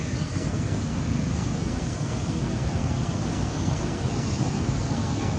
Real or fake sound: fake